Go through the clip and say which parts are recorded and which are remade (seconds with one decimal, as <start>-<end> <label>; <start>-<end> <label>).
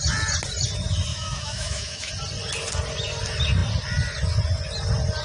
0.0-1.1 recorded; 1.1-2.1 remade; 2.1-5.2 recorded